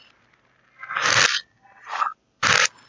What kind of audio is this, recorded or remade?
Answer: recorded